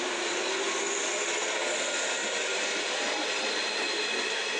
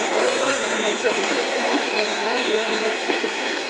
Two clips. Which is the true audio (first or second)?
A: first